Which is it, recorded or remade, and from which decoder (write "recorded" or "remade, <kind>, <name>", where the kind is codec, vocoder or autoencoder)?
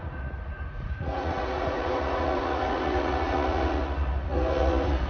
remade, vocoder, Vocos